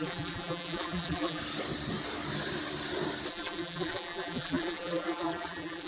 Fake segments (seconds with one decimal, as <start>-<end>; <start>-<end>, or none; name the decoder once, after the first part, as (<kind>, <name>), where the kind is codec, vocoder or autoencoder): 0.0-1.4 (vocoder, BigVGAN v2); 3.3-5.9